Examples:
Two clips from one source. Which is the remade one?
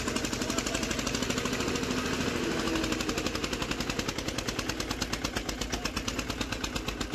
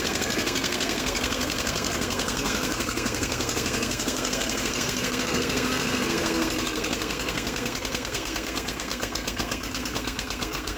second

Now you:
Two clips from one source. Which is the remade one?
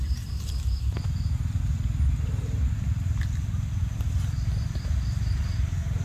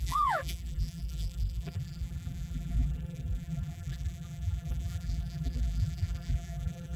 second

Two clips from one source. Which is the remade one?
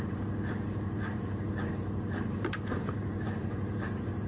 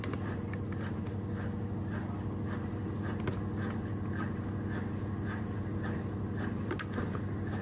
first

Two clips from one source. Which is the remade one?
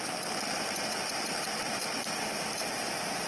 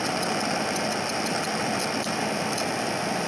first